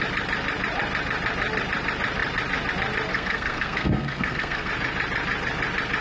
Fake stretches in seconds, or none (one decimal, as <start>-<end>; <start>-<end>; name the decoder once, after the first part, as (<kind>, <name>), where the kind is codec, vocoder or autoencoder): 3.1-4.7 (codec, SNAC)